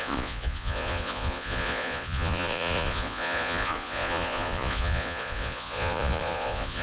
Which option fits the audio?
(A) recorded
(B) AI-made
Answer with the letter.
B